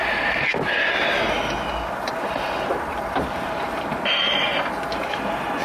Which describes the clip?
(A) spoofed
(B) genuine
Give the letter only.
B